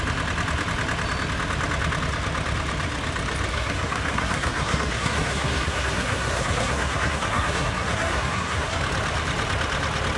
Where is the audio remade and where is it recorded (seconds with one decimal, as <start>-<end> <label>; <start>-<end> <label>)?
0.0-3.5 recorded; 3.5-8.8 remade; 8.8-10.2 recorded